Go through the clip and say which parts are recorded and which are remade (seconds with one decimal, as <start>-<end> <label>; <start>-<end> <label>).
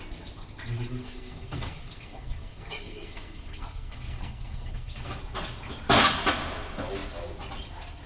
0.0-1.0 recorded; 1.0-5.2 remade; 5.2-8.1 recorded